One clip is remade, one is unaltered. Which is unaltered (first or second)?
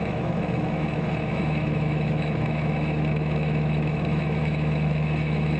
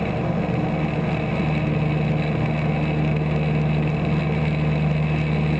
second